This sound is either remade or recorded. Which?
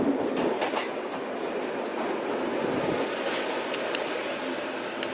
recorded